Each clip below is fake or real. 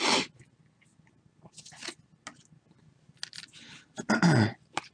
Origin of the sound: real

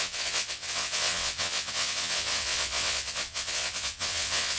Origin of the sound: fake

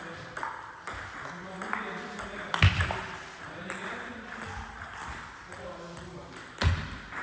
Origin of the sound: real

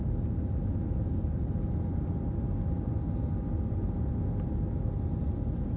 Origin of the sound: real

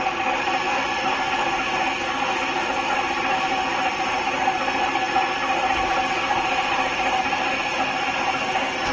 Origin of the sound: real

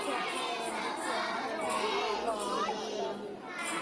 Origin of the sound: real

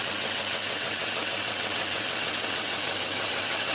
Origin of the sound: fake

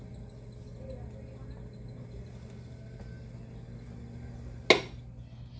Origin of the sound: real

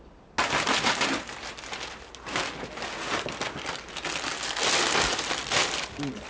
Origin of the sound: real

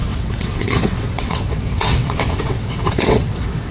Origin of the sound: fake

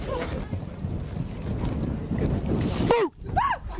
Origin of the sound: real